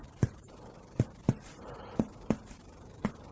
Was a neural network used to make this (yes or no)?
yes